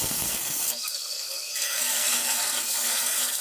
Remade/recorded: remade